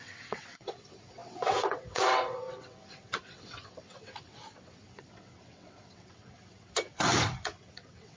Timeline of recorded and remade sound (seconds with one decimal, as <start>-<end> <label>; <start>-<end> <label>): 0.0-8.2 remade